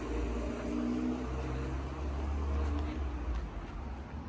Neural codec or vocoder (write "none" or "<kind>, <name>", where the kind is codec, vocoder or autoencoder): none